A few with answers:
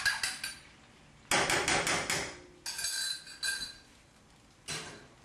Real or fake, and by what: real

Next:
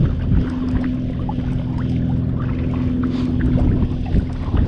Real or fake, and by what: real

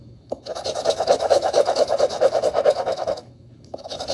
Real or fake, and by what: fake, autoencoder, DAC-VAE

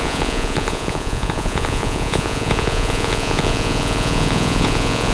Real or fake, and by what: fake, vocoder, Vocos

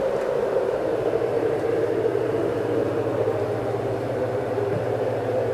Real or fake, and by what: fake, vocoder, BigVGAN v2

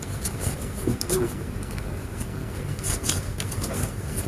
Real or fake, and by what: fake, codec, SNAC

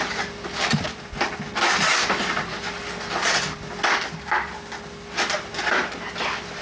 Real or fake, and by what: real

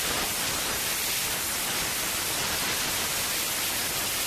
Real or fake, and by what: real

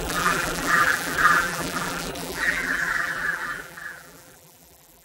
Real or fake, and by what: fake, vocoder, BigVGAN v2